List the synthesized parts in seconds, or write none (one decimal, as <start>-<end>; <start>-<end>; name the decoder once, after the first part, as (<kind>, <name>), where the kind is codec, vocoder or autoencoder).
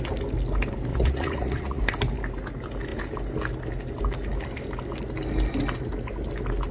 0.9-1.8 (vocoder, Vocos)